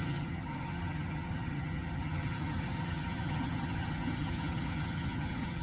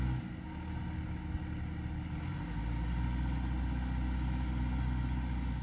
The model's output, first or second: first